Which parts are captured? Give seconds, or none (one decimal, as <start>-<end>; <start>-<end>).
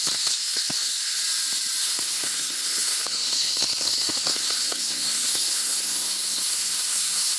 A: 1.2-1.8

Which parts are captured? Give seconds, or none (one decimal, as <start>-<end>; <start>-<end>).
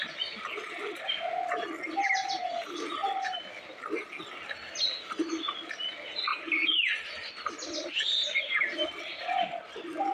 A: 0.0-10.1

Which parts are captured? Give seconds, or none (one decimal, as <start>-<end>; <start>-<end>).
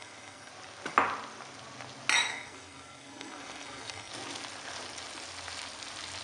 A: 0.5-2.3; 4.1-6.2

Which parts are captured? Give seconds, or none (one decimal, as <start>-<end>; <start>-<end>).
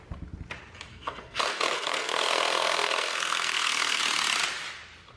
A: 0.0-0.9; 4.0-5.2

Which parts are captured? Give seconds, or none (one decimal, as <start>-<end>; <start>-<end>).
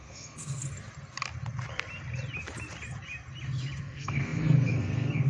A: 0.6-3.8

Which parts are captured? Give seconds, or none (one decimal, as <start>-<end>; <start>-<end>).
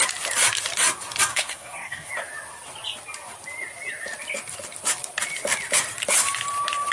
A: 0.0-1.3; 2.1-6.9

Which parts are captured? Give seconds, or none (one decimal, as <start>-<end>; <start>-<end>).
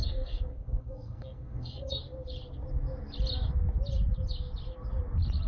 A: 2.0-5.5